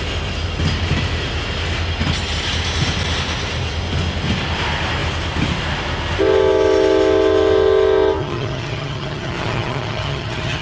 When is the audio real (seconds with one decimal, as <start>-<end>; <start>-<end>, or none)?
0.0-8.2